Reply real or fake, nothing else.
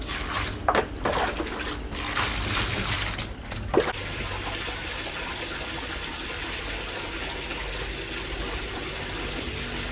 real